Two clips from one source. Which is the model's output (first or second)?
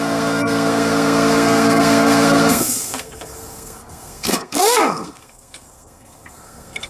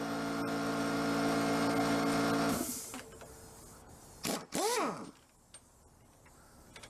first